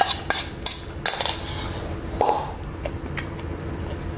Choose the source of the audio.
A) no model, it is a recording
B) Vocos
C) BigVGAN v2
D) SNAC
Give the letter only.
A